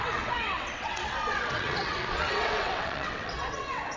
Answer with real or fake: fake